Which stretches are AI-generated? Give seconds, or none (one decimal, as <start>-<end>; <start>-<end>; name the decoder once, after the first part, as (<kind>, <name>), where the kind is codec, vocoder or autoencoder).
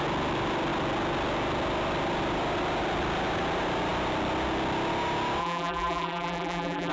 5.4-6.9 (vocoder, BigVGAN v2)